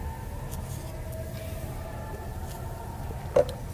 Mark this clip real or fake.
real